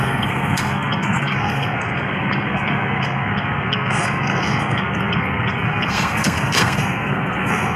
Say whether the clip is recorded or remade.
remade